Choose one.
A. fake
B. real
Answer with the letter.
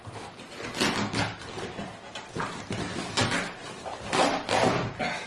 B